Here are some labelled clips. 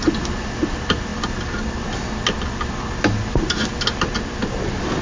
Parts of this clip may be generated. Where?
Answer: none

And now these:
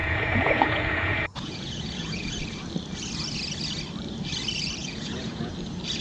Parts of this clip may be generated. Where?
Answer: 0.0-2.4; 4.8-5.5